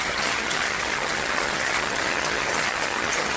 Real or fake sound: fake